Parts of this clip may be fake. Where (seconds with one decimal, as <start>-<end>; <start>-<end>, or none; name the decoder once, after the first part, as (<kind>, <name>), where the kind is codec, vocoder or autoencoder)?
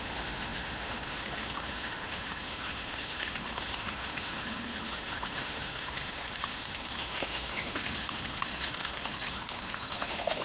0.0-10.4 (autoencoder, DAC-VAE)